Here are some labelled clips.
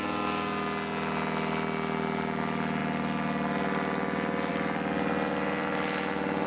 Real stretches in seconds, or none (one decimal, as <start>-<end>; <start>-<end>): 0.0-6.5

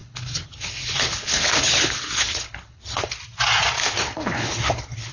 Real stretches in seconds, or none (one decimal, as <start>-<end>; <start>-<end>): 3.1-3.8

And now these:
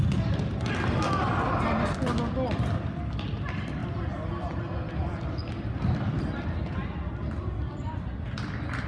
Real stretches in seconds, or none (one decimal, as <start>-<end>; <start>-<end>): 0.0-8.9

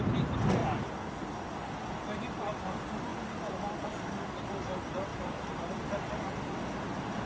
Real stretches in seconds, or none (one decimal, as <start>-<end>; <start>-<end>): 0.0-7.3